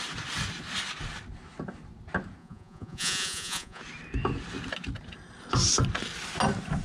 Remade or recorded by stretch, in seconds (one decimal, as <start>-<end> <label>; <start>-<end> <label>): 0.0-2.4 recorded; 2.4-3.8 remade; 3.8-6.8 recorded